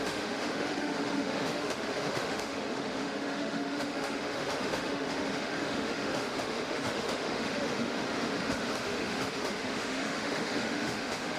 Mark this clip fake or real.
fake